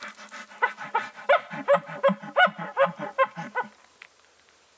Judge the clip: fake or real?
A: real